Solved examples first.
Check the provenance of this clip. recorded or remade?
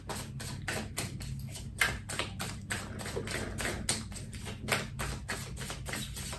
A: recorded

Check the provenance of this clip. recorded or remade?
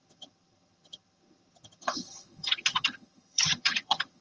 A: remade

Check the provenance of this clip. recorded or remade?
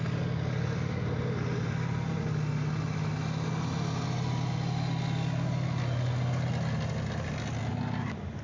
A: recorded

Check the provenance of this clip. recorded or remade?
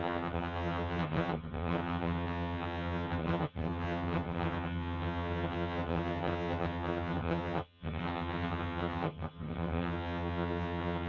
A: remade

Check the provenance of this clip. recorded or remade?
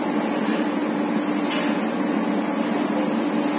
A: recorded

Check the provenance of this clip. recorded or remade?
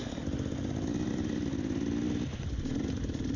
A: recorded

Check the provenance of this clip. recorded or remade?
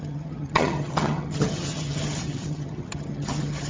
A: remade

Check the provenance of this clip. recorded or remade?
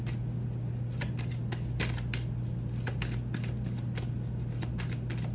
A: recorded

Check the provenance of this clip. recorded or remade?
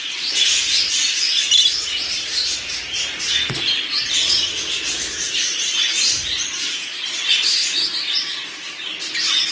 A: recorded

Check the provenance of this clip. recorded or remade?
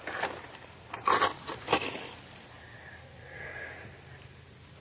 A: recorded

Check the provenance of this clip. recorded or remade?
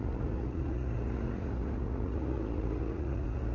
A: remade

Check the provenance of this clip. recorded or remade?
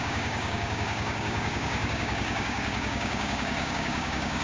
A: remade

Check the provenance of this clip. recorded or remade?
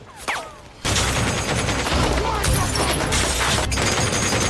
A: recorded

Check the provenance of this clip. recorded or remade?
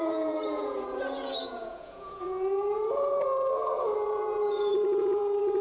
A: remade